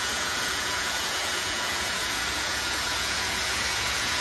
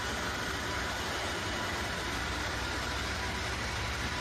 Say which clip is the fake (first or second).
first